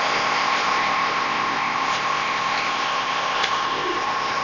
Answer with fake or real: fake